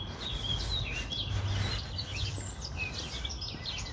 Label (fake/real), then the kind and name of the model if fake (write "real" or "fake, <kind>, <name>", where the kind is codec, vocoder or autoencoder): real